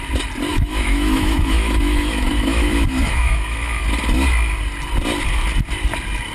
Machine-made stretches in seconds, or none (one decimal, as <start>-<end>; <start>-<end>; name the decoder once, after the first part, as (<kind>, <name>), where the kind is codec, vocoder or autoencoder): 0.5-3.8 (autoencoder, DAC-VAE)

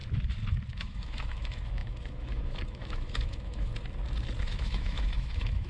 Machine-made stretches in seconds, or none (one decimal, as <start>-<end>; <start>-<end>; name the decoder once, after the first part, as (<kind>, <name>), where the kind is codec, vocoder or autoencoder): 0.8-3.7 (autoencoder, DAC-VAE); 4.4-5.7

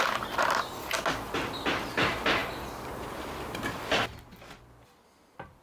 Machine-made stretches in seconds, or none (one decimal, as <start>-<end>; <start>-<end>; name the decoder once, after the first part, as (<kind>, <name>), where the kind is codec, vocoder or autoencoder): none